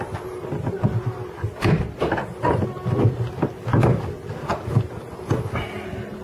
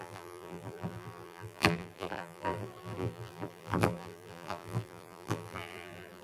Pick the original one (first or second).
first